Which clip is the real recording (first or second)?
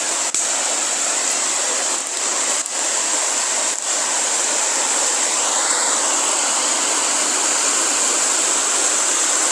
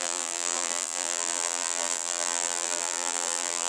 first